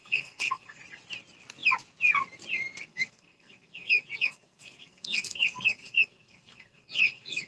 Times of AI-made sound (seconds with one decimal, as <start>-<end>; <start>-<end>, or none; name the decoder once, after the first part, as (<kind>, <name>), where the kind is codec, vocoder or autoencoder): 0.0-0.8 (codec, SNAC); 2.9-7.5